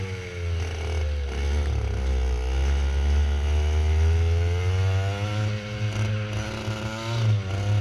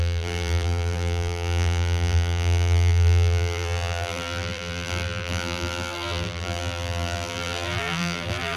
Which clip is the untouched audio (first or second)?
first